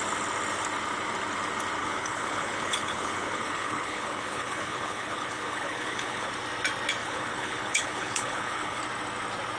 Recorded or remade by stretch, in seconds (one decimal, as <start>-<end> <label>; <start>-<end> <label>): 0.0-1.8 recorded; 1.8-6.3 remade; 6.3-7.0 recorded; 7.0-8.8 remade; 8.8-9.6 recorded